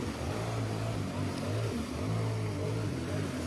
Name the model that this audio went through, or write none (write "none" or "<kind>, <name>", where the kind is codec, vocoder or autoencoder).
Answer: none